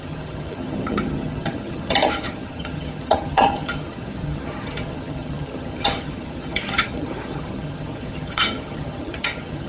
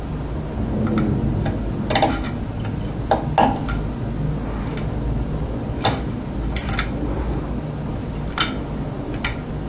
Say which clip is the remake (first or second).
first